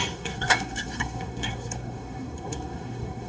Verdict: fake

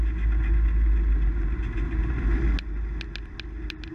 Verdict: real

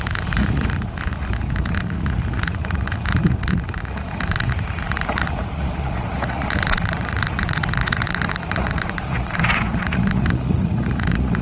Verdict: fake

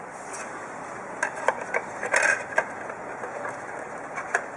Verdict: real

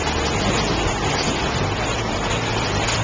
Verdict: real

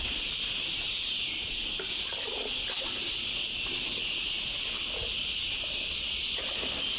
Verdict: real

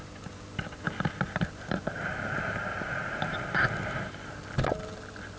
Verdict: real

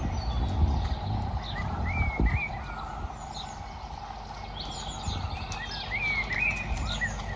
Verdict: real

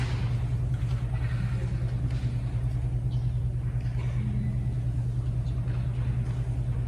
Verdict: real